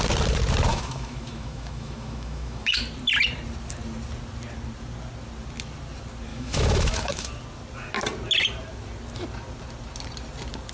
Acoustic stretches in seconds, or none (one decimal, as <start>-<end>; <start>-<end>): 0.0-0.7; 2.8-6.3; 7.3-10.7